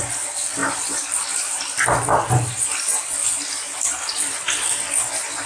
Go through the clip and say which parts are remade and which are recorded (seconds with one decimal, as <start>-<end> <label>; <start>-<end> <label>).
0.0-5.5 recorded